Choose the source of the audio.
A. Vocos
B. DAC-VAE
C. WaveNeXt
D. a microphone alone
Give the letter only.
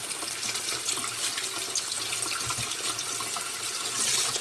D